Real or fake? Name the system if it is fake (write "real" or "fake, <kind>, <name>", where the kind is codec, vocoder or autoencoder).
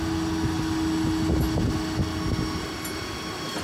real